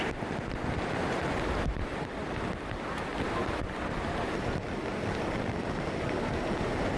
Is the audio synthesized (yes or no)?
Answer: no